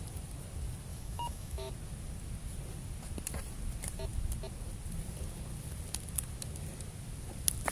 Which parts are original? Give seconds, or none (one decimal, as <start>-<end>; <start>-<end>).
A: 0.0-0.9; 1.7-7.7